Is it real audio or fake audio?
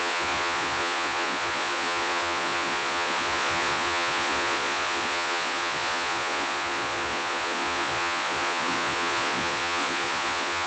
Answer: fake